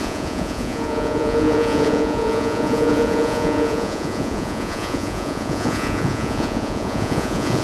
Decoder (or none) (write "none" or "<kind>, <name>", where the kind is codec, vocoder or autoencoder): vocoder, Vocos